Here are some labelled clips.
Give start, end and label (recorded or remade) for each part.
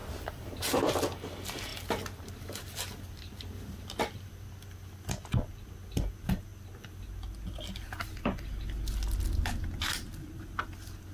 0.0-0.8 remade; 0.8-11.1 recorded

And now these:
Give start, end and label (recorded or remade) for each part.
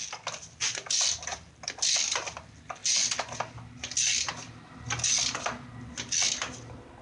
0.0-7.0 recorded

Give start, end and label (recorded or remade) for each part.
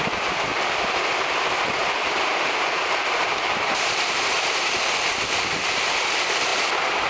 0.0-1.8 recorded; 1.8-4.8 remade; 4.8-7.1 recorded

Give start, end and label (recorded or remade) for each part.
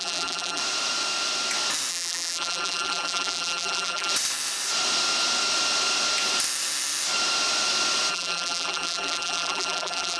0.0-0.6 remade; 0.6-1.9 recorded; 1.9-4.1 remade; 4.1-8.1 recorded; 8.1-10.2 remade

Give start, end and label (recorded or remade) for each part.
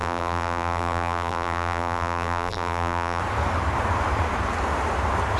0.0-3.2 remade; 3.2-5.4 recorded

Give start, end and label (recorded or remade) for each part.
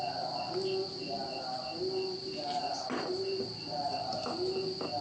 0.0-2.2 recorded; 2.2-4.1 remade; 4.1-5.0 recorded